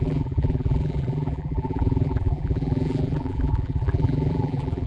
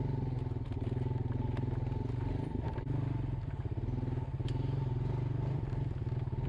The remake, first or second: first